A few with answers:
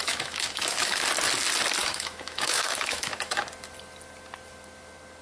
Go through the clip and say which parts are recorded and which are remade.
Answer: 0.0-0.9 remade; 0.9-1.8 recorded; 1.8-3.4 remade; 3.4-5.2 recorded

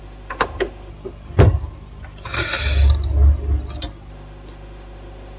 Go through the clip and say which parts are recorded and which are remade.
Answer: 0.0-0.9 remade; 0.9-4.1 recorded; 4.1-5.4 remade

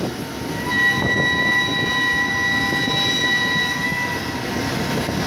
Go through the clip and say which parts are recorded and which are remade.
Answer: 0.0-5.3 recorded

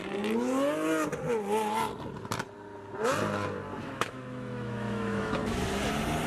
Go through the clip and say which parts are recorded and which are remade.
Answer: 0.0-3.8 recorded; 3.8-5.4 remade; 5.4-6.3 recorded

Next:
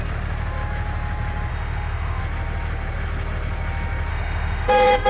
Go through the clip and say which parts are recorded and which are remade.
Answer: 0.0-1.5 recorded; 1.5-2.2 remade; 2.2-4.1 recorded; 4.1-5.1 remade